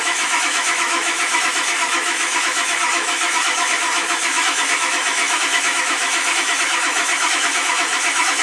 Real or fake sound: fake